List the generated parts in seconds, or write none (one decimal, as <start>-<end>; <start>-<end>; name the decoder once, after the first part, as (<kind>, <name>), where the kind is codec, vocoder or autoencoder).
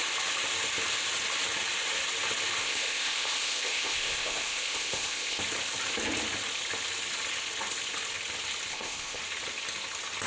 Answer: 2.6-5.4 (codec, ZipCodec); 8.7-9.2